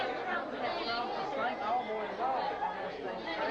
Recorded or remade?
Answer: recorded